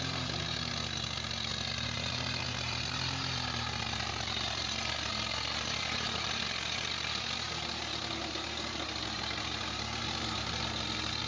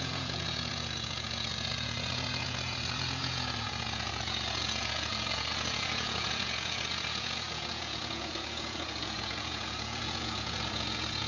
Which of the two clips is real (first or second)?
first